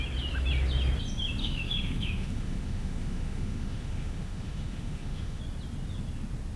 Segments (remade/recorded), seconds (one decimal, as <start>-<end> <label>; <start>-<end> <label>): 0.0-1.4 recorded; 1.4-5.4 remade; 5.4-6.6 recorded